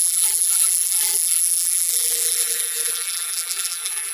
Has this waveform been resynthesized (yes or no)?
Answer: yes